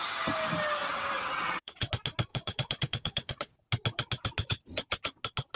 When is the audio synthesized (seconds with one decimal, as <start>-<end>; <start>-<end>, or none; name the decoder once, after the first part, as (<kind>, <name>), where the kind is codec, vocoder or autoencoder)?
0.8-1.9 (vocoder, WaveNeXt); 2.3-3.5